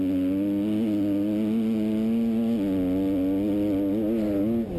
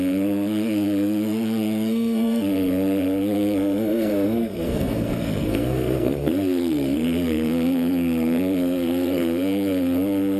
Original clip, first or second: first